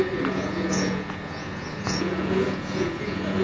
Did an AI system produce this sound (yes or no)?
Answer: yes